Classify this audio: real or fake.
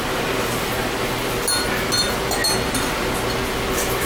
real